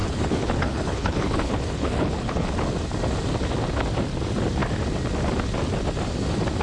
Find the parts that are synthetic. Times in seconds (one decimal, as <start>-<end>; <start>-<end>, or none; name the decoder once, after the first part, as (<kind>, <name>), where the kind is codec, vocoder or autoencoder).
0.0-2.5 (codec, HILCodec)